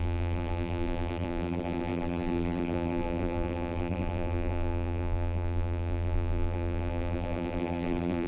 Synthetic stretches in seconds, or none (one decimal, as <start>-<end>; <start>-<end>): 0.0-8.3